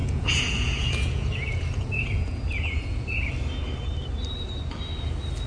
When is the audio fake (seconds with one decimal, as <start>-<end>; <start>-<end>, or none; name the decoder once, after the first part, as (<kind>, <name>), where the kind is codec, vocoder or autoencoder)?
0.0-3.3 (vocoder, Vocos)